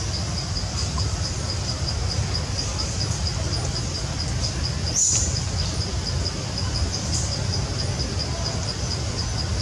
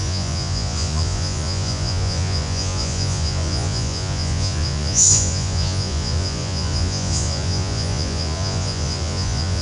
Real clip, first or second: first